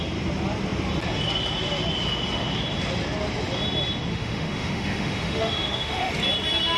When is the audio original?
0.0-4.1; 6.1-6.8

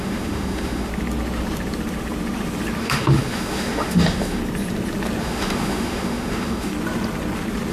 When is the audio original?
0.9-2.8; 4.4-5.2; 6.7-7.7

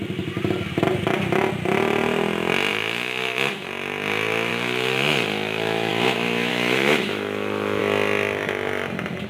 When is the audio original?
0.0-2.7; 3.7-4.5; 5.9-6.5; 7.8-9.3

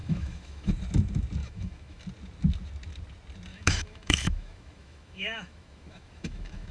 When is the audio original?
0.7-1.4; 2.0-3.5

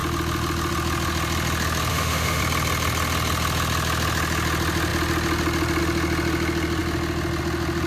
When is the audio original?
0.0-1.9; 2.4-7.9

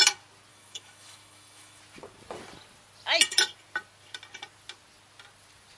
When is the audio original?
0.0-0.5; 1.8-5.8